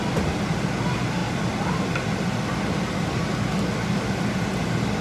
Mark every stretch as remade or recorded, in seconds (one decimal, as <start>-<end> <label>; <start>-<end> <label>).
0.0-5.0 recorded